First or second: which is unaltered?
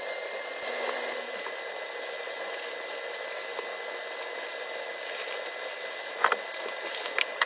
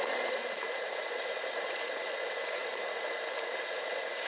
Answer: first